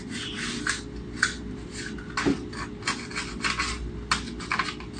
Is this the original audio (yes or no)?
yes